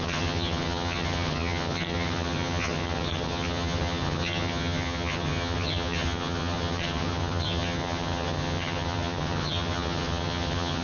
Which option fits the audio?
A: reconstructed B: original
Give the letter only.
A